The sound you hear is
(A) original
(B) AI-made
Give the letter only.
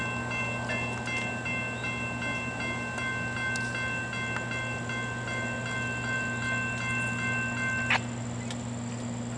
A